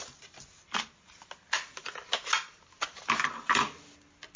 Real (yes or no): yes